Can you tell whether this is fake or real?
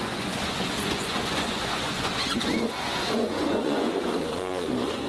fake